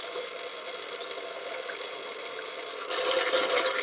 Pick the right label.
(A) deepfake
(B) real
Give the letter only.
B